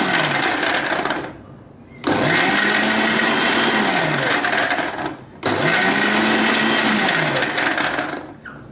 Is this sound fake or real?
real